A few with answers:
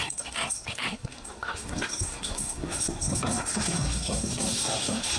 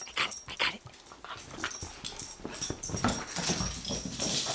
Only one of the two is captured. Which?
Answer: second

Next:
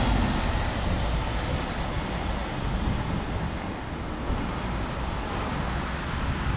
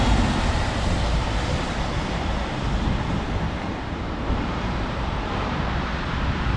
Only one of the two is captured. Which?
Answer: first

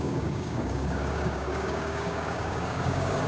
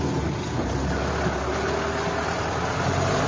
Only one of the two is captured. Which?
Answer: second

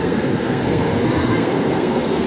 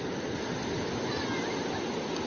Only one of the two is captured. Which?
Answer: second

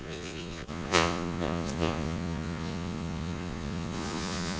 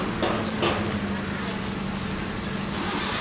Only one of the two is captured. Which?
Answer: second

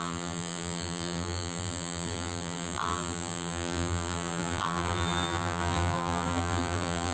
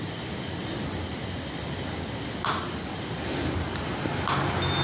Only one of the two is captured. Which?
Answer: second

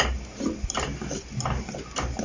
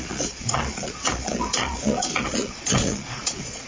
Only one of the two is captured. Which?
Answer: first